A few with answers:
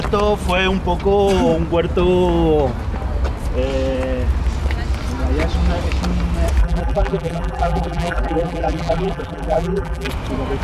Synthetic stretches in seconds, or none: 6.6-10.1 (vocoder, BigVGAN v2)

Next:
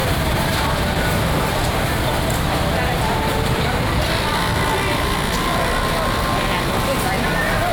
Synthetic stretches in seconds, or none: 0.0-0.6 (vocoder, BigVGAN v2)

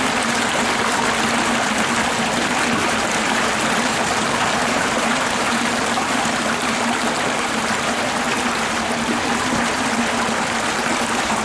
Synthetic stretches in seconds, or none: 2.8-8.0 (vocoder, BigVGAN v2)

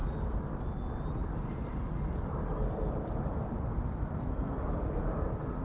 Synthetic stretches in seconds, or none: 1.7-2.2 (vocoder, BigVGAN v2); 3.7-5.0

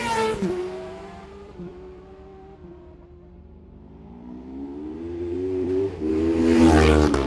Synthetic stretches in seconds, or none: 0.0-7.3 (vocoder, BigVGAN v2)